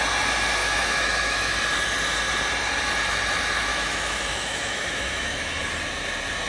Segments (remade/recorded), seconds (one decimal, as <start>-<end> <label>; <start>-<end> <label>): 0.0-0.6 recorded; 0.6-1.6 remade; 1.6-3.7 recorded; 3.7-5.6 remade; 5.6-6.5 recorded